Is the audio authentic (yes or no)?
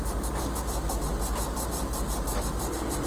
yes